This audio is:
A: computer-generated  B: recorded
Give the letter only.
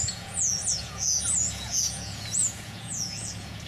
A